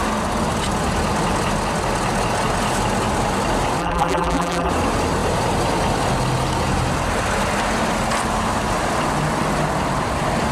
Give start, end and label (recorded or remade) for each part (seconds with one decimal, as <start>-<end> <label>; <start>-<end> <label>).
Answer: 0.0-3.8 recorded; 3.8-4.7 remade; 4.7-10.5 recorded

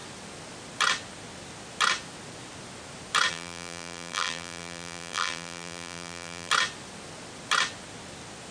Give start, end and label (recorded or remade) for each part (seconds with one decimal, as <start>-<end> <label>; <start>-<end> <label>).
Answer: 0.0-3.3 recorded; 3.3-6.5 remade; 6.5-8.5 recorded

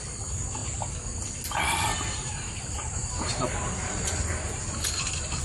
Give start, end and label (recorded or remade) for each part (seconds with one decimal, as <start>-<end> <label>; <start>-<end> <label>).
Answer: 0.0-0.6 remade; 0.6-2.1 recorded; 2.1-5.4 remade